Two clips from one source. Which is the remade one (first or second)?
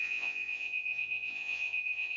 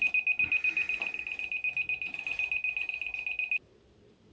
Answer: first